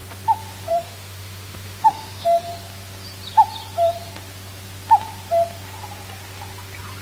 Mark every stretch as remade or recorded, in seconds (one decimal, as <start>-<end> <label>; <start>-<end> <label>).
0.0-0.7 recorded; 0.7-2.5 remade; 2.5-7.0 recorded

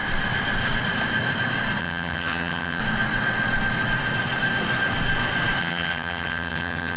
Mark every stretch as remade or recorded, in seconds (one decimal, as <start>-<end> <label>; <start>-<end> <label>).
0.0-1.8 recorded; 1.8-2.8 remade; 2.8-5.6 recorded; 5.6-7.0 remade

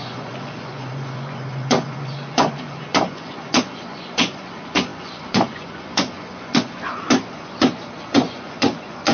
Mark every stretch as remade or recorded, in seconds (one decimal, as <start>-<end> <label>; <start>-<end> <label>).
0.0-9.1 remade

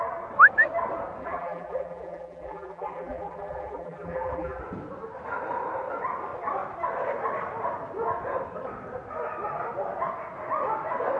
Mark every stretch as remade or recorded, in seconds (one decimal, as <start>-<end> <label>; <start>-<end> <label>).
0.0-1.2 recorded; 1.2-4.6 remade; 4.6-11.2 recorded

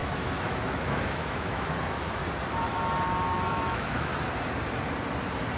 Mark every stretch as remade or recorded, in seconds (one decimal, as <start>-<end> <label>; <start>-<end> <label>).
0.0-2.2 remade; 2.2-3.5 recorded; 3.5-4.1 remade; 4.1-5.6 recorded

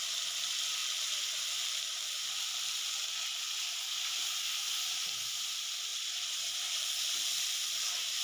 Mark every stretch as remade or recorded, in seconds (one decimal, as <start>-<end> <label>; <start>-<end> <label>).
0.0-5.9 recorded; 5.9-8.2 remade

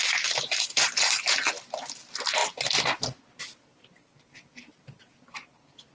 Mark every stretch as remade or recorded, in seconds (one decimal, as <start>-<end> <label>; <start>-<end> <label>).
0.0-5.9 recorded